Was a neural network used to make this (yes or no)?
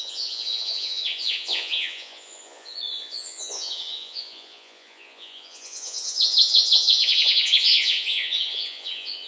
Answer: yes